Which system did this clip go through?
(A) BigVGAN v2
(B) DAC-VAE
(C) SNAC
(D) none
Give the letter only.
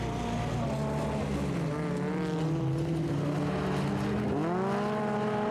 D